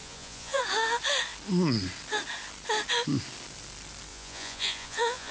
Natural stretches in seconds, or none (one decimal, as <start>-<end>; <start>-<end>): 0.6-4.1